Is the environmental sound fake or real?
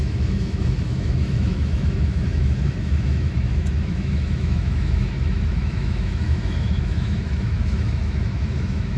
fake